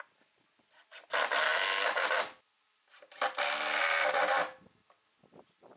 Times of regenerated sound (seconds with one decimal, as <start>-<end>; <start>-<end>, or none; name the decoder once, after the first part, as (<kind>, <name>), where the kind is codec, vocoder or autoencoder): none